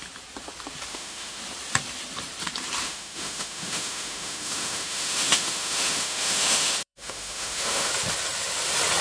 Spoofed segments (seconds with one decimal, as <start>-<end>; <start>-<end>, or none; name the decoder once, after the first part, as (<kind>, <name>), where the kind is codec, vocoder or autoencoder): 0.9-1.4 (autoencoder, DAC-VAE); 2.8-7.9